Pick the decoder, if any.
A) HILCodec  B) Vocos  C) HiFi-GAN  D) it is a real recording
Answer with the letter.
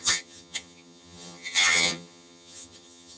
C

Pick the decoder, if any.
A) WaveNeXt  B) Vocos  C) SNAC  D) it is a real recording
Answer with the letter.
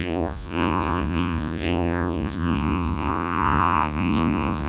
B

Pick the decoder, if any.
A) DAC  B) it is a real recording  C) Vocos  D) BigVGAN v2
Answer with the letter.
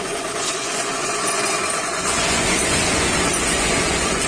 C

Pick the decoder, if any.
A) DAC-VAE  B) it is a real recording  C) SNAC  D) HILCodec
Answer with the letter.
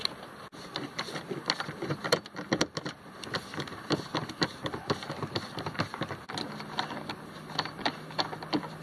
B